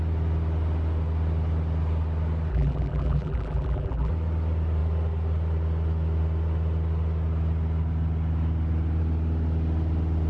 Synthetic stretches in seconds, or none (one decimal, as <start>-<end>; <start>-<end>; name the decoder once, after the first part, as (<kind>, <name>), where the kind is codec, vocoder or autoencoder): 2.5-4.1 (vocoder, BigVGAN v2)